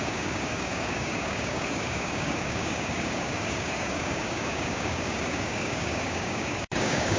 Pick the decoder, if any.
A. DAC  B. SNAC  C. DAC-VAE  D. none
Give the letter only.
A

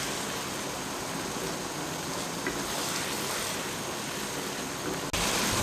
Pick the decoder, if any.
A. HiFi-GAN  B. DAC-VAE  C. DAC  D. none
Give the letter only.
D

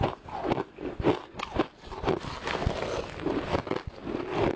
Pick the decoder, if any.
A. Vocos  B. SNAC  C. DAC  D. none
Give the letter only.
D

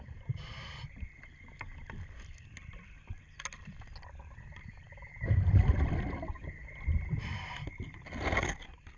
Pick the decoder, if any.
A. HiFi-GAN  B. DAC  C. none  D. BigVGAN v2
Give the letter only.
C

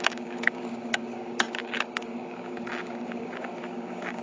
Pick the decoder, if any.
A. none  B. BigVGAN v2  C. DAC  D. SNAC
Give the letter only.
C